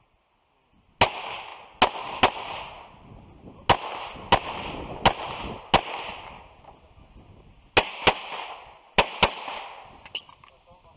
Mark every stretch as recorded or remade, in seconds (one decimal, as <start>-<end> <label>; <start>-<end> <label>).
0.0-11.0 recorded